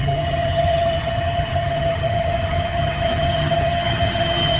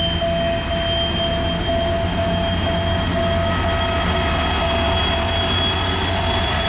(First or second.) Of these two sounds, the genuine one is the second